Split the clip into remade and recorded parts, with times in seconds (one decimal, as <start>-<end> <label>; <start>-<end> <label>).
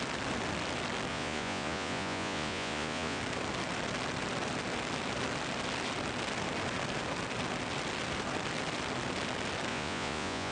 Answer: 0.0-1.1 recorded; 1.1-3.2 remade; 3.2-9.7 recorded; 9.7-10.5 remade